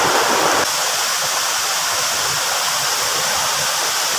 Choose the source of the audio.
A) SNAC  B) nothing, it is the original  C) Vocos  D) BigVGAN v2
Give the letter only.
B